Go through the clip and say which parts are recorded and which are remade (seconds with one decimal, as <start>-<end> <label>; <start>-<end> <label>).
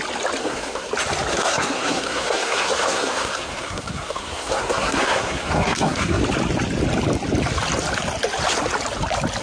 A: 0.0-0.4 recorded; 0.4-0.9 remade; 0.9-1.3 recorded; 1.3-6.2 remade; 6.2-9.4 recorded